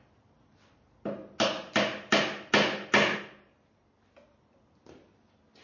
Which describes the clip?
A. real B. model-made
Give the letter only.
A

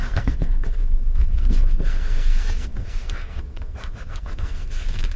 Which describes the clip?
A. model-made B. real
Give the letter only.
A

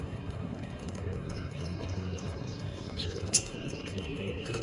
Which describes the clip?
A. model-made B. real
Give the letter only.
A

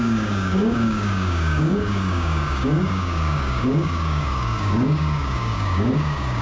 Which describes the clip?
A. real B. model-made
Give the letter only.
B